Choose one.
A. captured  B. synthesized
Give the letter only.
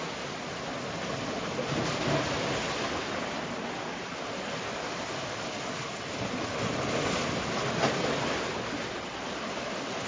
A